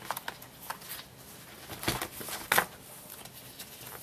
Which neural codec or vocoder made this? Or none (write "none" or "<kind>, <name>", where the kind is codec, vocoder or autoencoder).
none